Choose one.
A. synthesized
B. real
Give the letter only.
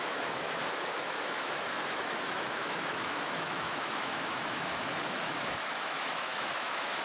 A